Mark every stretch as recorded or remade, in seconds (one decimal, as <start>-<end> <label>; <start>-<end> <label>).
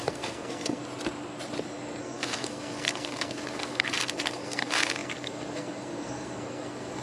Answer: 0.0-0.8 remade; 0.8-2.0 recorded; 2.0-7.0 remade